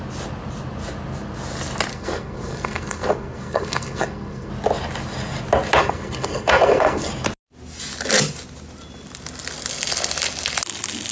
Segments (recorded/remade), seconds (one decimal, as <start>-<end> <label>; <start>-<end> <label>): 0.0-1.9 recorded; 1.9-4.5 remade; 4.5-5.8 recorded; 5.8-7.1 remade; 7.1-11.1 recorded

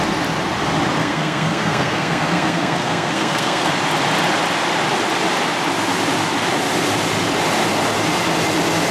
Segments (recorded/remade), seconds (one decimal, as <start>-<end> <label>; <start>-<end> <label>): 0.0-1.0 recorded; 1.0-3.7 remade; 3.7-8.9 recorded